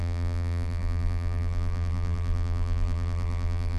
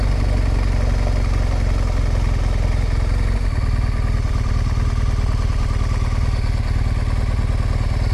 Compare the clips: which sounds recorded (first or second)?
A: second